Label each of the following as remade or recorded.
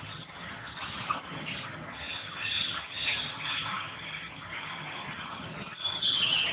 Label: remade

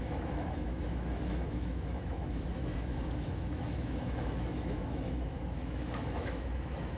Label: remade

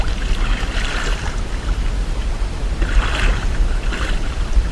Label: remade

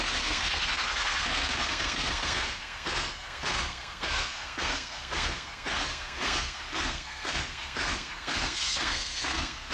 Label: remade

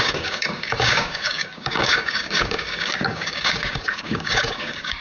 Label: remade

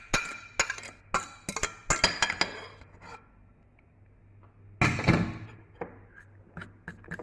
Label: recorded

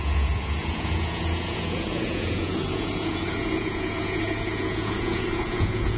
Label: remade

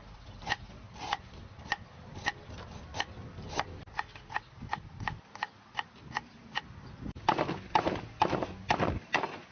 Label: recorded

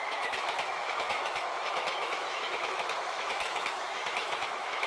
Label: remade